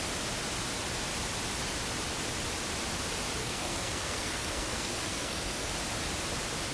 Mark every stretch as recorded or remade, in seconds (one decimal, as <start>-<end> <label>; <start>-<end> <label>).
0.0-3.4 recorded; 3.4-5.7 remade; 5.7-6.7 recorded